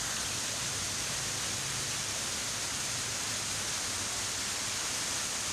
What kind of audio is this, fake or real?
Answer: real